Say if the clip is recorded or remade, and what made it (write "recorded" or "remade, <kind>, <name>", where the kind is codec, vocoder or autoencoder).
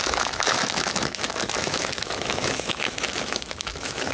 remade, autoencoder, DAC-VAE